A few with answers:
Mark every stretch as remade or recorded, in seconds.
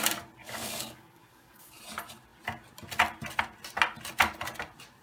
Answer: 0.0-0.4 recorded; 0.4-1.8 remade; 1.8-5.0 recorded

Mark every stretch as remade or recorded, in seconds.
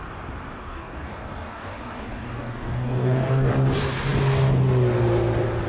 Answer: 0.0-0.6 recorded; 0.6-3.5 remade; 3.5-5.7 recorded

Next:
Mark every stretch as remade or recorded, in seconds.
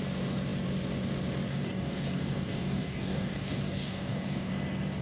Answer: 0.0-1.5 recorded; 1.5-4.5 remade; 4.5-5.0 recorded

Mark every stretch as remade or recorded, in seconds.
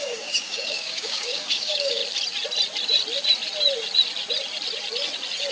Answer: 0.0-2.0 remade; 2.0-5.5 recorded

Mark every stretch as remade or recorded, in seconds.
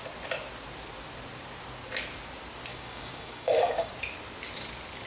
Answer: 0.0-2.7 recorded; 2.7-3.9 remade; 3.9-5.1 recorded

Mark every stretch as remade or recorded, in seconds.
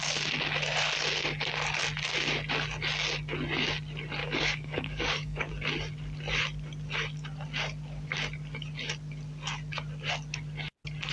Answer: 0.0-4.2 recorded; 4.2-5.5 remade; 5.5-11.1 recorded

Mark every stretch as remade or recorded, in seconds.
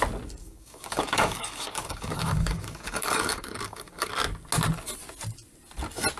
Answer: 0.0-0.4 recorded; 0.4-4.1 remade; 4.1-6.2 recorded